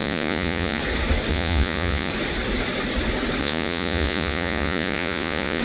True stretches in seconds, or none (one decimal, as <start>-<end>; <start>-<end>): 0.8-1.3; 2.1-3.4

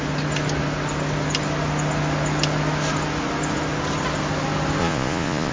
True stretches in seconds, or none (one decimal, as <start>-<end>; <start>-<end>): 0.0-4.8

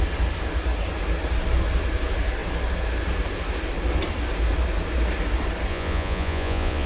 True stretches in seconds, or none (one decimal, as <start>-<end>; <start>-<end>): 0.0-5.7

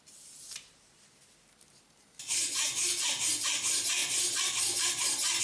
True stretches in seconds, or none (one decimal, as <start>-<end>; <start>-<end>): 0.0-5.4

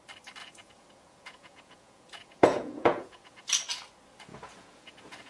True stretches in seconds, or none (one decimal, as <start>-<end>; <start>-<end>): 0.0-0.4; 3.5-4.3